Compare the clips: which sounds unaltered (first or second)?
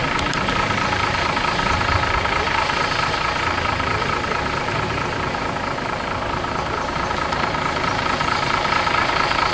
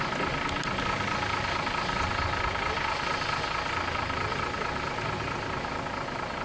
second